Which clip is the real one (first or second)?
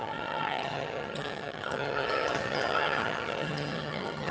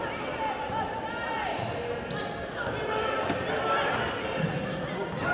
second